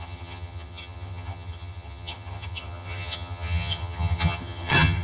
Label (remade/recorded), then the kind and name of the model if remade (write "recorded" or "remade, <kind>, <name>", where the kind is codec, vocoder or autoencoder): remade, vocoder, HiFi-GAN